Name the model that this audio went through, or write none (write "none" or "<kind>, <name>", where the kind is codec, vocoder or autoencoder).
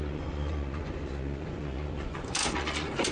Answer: vocoder, Vocos